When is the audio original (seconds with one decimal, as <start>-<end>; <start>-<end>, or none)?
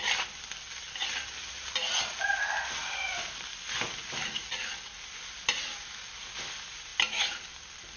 0.0-8.0